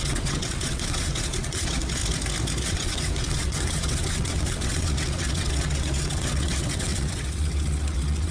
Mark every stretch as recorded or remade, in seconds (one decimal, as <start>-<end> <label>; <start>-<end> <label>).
0.0-2.0 remade; 2.0-2.6 recorded; 2.6-8.3 remade